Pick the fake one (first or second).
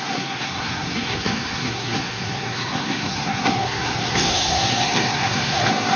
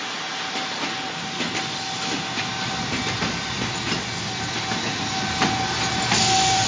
first